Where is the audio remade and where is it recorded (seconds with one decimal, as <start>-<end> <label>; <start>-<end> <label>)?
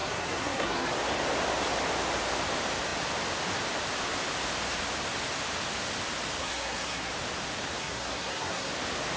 0.0-0.9 remade; 0.9-6.4 recorded; 6.4-7.1 remade; 7.1-7.8 recorded; 7.8-8.7 remade; 8.7-9.2 recorded